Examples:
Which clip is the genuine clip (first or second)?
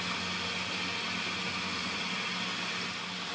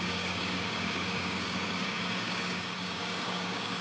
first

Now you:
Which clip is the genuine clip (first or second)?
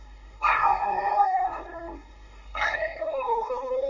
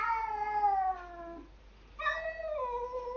second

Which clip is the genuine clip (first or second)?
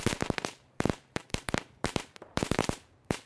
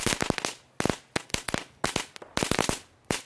second